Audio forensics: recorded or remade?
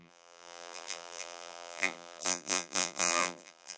remade